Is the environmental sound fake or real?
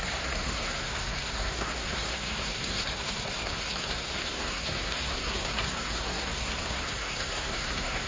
fake